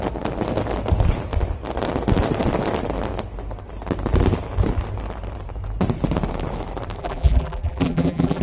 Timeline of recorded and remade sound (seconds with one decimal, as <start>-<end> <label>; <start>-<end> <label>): 0.0-7.0 recorded; 7.0-8.4 remade